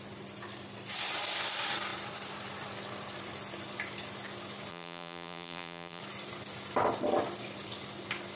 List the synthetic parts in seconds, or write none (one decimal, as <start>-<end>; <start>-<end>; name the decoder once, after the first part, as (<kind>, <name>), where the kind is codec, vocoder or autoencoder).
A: 4.7-6.0 (vocoder, BigVGAN v2)